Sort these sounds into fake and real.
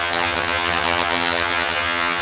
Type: fake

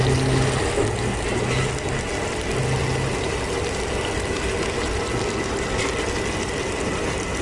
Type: real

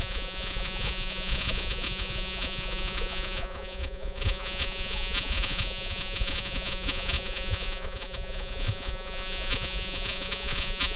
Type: fake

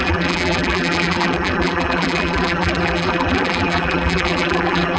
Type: fake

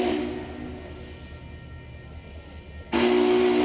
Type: real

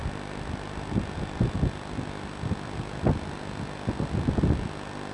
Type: real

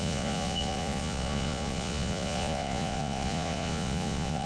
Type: fake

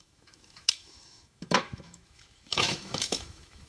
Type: fake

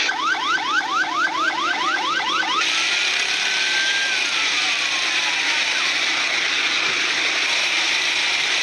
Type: real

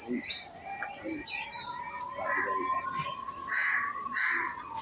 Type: real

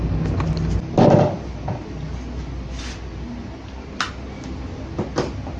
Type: real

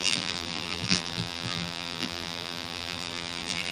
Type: fake